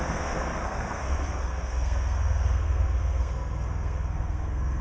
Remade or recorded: remade